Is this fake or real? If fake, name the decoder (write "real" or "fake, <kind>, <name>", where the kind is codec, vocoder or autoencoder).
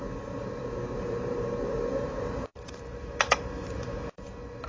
fake, vocoder, BigVGAN v2